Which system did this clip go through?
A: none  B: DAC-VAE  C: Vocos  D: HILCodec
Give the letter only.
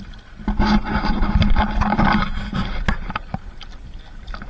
A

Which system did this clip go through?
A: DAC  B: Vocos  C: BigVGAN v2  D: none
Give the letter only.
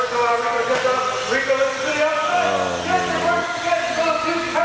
D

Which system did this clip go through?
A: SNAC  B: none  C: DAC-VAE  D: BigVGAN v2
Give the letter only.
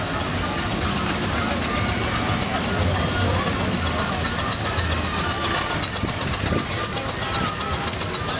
B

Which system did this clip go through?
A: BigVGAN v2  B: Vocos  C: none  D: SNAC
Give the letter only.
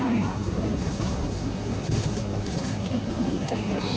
D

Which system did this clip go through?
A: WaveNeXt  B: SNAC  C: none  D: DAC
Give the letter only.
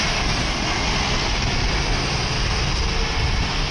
C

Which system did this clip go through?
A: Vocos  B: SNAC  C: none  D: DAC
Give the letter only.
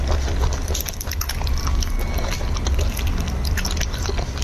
C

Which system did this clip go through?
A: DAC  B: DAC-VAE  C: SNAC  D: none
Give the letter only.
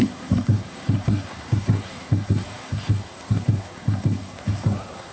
C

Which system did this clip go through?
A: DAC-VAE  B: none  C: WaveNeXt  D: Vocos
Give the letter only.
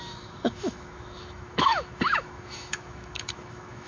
A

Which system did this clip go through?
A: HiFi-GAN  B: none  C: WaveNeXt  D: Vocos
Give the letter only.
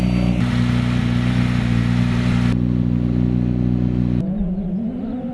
B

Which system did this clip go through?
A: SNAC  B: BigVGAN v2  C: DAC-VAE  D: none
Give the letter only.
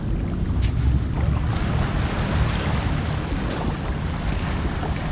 D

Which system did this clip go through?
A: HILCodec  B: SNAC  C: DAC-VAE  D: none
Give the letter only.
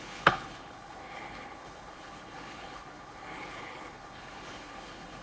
A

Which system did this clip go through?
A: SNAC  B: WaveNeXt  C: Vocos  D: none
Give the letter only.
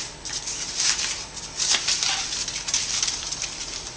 D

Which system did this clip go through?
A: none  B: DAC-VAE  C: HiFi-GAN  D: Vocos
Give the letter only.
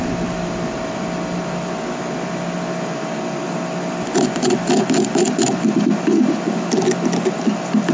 A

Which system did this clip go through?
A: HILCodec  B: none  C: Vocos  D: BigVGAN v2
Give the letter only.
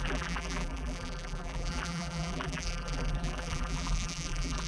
D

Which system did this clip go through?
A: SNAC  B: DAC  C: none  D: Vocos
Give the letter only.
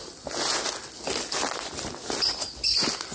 C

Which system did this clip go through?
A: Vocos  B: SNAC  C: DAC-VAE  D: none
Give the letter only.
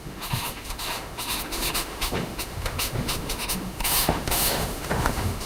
C